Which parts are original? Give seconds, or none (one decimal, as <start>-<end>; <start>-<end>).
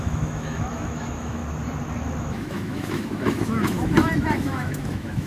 1.4-2.2